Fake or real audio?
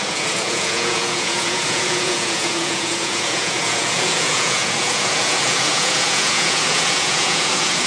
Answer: fake